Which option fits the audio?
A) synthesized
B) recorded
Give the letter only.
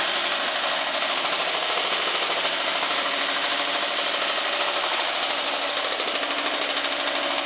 B